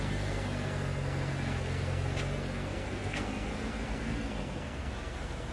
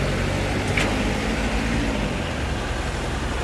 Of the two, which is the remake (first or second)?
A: first